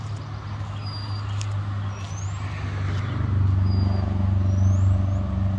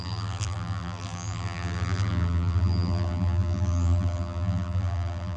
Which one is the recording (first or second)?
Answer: first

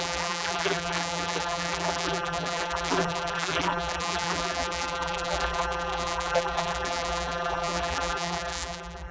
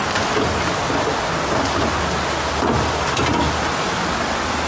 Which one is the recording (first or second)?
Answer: second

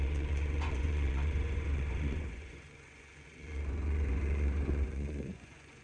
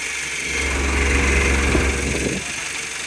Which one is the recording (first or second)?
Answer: second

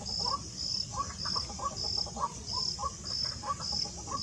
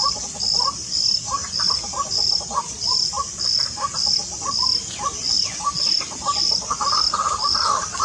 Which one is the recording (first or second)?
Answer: first